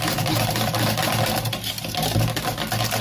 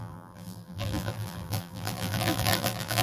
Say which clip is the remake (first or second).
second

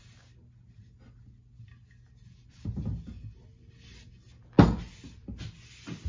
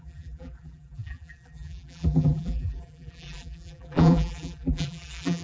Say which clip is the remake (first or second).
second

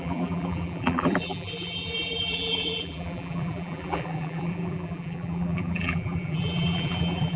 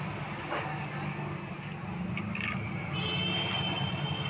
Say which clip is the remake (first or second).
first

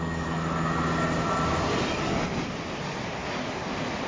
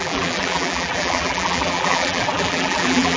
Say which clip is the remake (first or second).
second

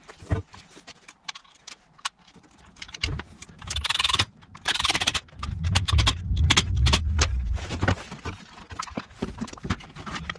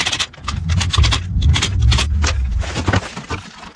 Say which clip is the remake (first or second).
first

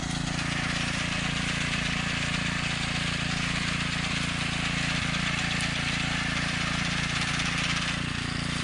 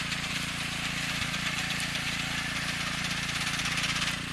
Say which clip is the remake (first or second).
second